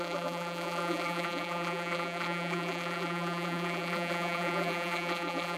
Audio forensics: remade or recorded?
remade